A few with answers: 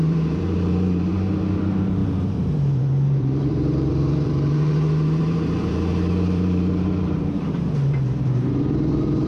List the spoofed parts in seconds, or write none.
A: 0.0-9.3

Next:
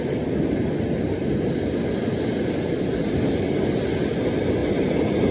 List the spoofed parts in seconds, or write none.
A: none

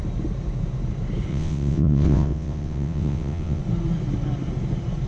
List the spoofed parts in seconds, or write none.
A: 1.3-3.6

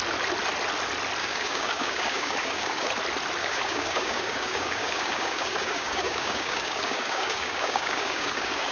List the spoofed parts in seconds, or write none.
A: 1.2-2.9; 3.4-8.7